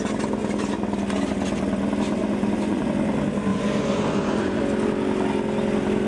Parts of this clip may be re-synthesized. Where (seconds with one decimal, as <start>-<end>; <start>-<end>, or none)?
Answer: 2.2-2.9; 3.5-4.6